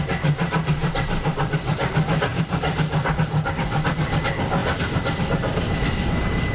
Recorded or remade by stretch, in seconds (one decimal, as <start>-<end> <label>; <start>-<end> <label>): 0.0-6.5 recorded